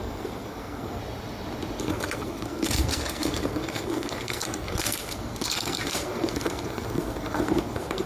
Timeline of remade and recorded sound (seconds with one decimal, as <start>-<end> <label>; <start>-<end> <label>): 0.0-1.0 remade; 1.0-1.8 recorded; 1.8-8.1 remade